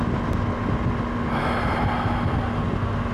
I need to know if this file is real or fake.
real